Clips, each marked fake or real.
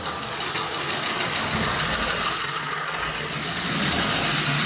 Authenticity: real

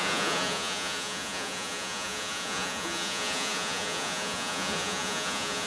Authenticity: fake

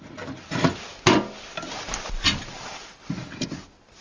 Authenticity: real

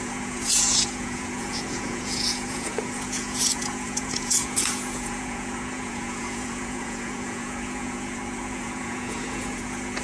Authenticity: fake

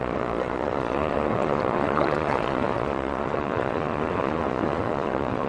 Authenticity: fake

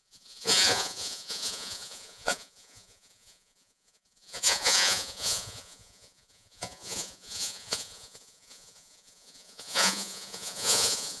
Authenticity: fake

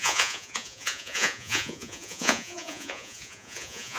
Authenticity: fake